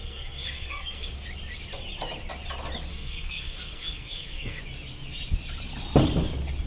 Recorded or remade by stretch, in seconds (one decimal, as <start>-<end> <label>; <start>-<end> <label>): 0.0-1.1 remade; 1.1-2.9 recorded; 2.9-4.6 remade; 4.6-6.7 recorded